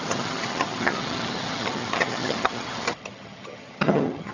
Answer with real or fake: fake